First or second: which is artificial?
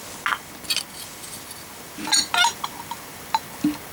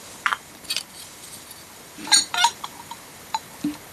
second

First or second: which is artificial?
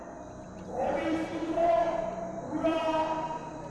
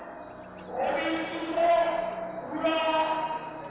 first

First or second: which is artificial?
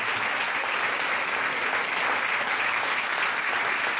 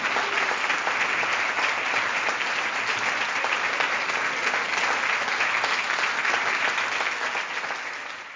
first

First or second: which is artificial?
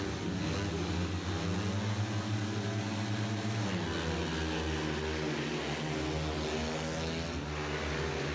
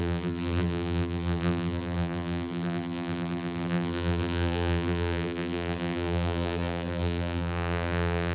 second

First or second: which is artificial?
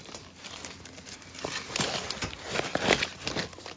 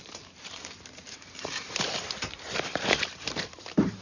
second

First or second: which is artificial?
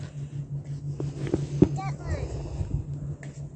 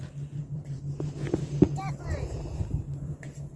second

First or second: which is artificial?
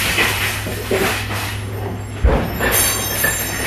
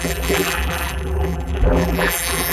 second